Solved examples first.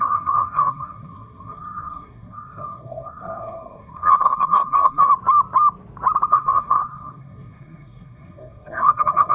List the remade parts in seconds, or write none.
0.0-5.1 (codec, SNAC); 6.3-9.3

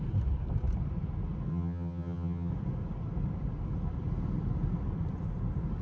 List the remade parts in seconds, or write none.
1.5-2.5 (vocoder, HiFi-GAN)

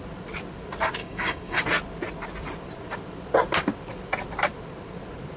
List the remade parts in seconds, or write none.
1.0-1.6 (codec, DAC)

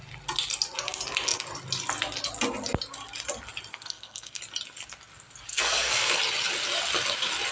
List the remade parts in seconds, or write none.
3.7-4.4 (codec, SNAC); 5.5-6.2